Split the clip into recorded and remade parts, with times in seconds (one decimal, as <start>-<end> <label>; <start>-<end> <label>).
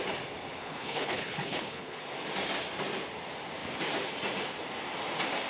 0.0-0.6 recorded; 0.6-2.0 remade; 2.0-5.5 recorded